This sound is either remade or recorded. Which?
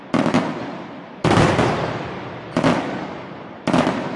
recorded